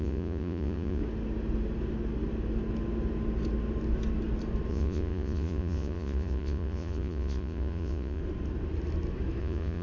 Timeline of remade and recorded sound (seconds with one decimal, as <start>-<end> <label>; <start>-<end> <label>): 0.0-1.0 remade; 1.0-4.7 recorded; 4.7-8.2 remade; 8.2-9.4 recorded; 9.4-9.8 remade